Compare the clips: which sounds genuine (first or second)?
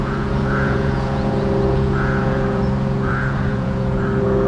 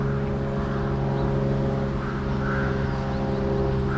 second